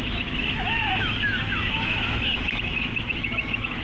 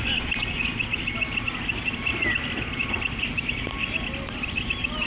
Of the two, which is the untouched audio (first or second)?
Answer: second